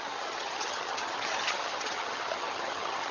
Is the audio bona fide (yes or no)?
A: no